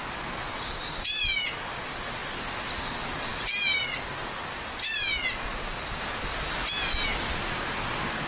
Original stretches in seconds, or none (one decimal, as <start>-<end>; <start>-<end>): 0.0-8.3